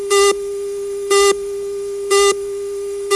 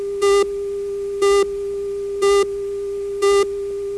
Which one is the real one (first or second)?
second